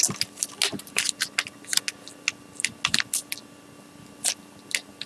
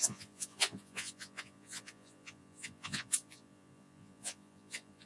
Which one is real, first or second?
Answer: first